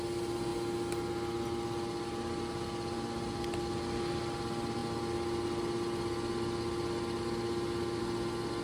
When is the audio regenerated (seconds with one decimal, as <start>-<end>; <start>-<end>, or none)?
none